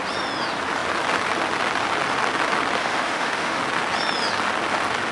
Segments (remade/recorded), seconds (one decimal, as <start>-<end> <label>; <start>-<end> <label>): 0.0-2.8 recorded; 2.8-3.6 remade; 3.6-5.1 recorded